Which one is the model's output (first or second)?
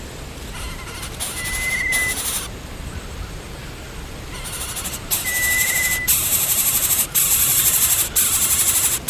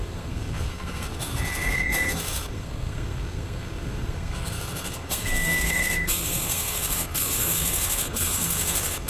second